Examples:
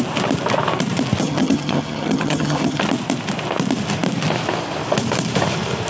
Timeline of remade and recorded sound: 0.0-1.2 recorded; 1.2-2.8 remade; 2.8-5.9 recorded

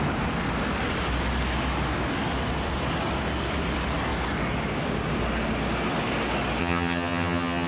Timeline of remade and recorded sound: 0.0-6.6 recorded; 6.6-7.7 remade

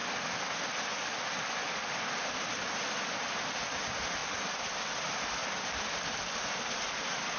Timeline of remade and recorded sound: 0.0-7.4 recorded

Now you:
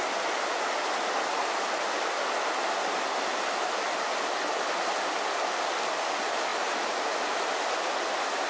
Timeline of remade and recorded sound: 0.0-8.5 recorded